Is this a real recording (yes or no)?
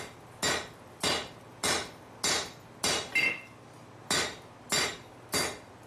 yes